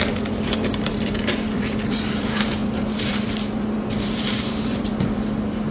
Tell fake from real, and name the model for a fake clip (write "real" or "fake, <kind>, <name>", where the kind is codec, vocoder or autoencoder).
fake, vocoder, BigVGAN v2